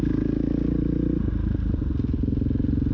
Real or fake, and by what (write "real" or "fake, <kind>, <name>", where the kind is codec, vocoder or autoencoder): real